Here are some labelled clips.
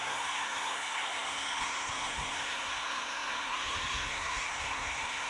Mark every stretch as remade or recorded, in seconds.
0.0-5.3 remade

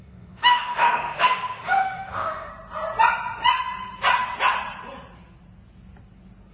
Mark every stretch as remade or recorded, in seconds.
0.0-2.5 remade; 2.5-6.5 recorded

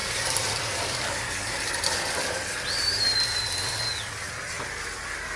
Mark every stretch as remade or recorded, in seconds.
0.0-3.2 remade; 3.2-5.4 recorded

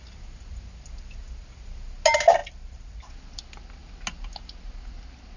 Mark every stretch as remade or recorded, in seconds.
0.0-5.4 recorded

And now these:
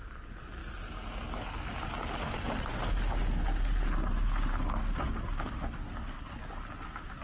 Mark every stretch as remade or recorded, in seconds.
0.0-7.2 recorded